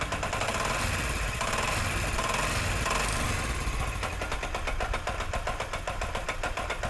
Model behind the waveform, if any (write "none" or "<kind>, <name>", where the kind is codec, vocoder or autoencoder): none